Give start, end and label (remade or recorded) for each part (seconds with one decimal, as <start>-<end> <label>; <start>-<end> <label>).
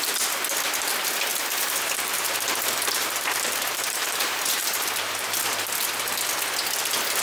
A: 0.0-1.3 recorded; 1.3-5.4 remade; 5.4-7.2 recorded